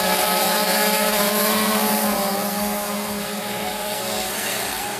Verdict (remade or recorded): remade